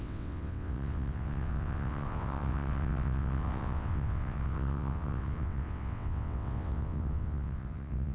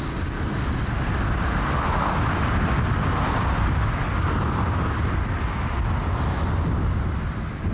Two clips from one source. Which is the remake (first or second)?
first